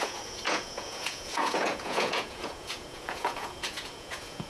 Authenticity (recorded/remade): remade